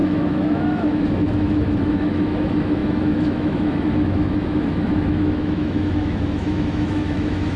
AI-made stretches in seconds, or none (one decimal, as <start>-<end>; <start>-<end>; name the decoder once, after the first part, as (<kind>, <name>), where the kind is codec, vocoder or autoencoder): 0.0-7.6 (autoencoder, DAC-VAE)